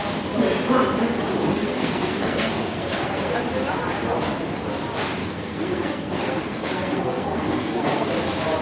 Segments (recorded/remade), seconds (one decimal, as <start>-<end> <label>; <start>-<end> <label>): 0.0-1.5 recorded; 1.5-3.5 remade; 3.5-5.2 recorded; 5.2-8.1 remade; 8.1-8.6 recorded